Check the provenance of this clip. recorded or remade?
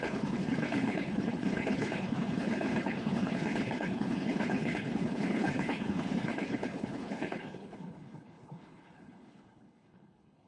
remade